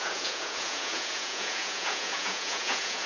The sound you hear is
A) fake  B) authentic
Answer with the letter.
A